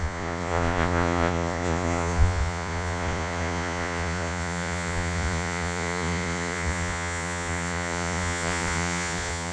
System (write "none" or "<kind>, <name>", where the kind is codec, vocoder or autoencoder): vocoder, Vocos